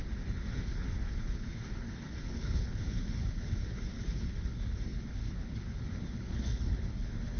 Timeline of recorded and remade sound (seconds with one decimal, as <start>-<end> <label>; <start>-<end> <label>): 0.0-7.4 remade